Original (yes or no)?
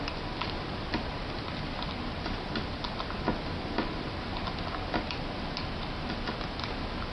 yes